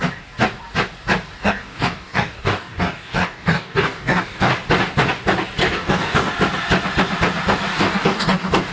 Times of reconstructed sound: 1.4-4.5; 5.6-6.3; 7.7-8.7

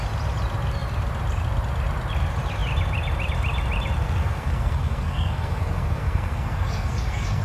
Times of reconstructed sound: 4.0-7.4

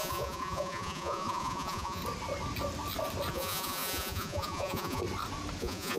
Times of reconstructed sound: 0.0-2.0; 3.3-5.0; 5.6-6.0